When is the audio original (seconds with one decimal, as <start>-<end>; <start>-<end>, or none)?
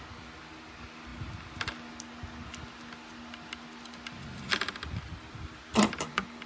0.0-6.5